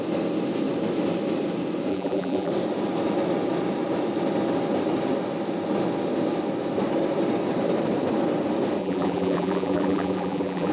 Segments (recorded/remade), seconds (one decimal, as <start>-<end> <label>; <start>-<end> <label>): 0.0-1.9 recorded; 1.9-2.5 remade; 2.5-8.8 recorded; 8.8-10.7 remade